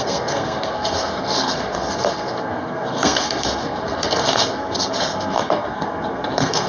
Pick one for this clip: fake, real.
fake